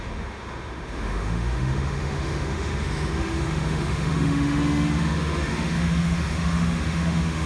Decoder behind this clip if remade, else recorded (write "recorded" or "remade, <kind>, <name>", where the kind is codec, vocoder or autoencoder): remade, autoencoder, DAC-VAE